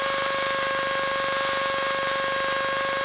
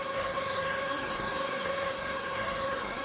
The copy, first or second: second